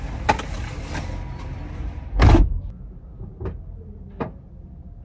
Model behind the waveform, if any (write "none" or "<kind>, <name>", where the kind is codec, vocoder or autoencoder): none